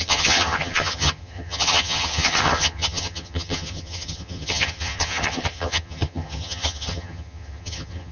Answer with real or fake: fake